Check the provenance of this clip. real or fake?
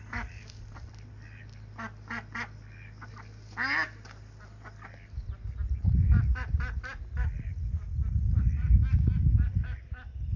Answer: real